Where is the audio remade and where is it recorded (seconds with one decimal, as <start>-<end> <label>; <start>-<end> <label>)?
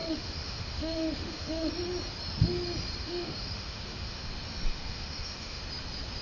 0.0-1.7 remade; 1.7-3.0 recorded; 3.0-4.3 remade; 4.3-4.7 recorded; 4.7-5.6 remade; 5.6-6.2 recorded